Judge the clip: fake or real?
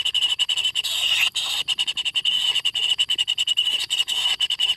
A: real